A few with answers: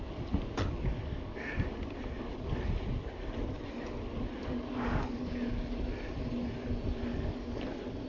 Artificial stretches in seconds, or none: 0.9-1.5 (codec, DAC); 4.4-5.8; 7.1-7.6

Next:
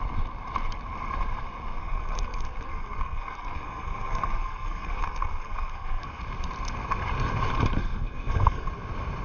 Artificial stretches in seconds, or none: 1.8-6.2 (codec, SNAC); 7.8-8.7

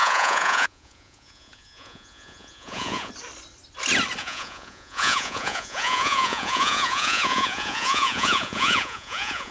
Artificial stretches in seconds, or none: 0.0-3.1 (vocoder, Vocos); 4.2-9.5

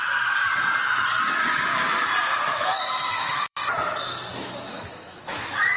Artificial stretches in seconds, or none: 1.2-1.7 (autoencoder, DAC-VAE); 2.4-3.6; 4.3-5.8